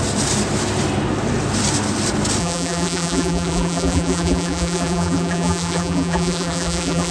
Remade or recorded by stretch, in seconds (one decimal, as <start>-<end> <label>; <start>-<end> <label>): 0.0-2.4 recorded; 2.4-7.1 remade